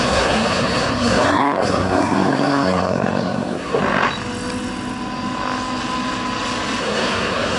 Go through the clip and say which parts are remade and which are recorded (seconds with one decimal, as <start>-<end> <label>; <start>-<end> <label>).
0.0-3.8 remade; 3.8-6.8 recorded; 6.8-7.6 remade